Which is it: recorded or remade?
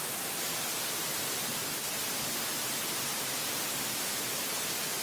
recorded